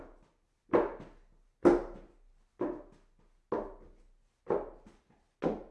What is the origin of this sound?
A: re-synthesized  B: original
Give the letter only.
B